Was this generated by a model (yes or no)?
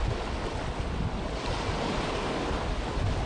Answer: no